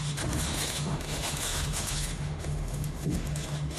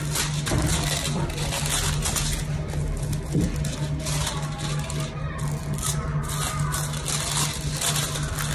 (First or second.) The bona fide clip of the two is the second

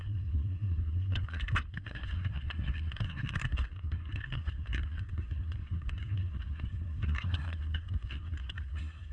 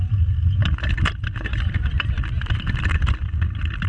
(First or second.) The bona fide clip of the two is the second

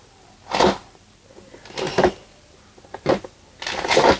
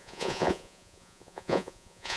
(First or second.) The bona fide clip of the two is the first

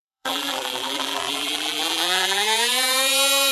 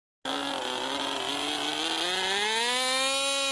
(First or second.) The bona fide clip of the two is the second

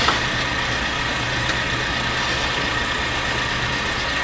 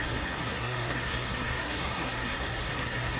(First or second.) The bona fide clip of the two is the first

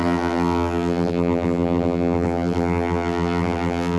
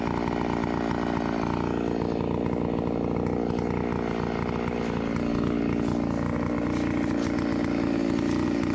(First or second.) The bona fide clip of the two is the second